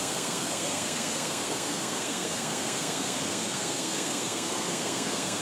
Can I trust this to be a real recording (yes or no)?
no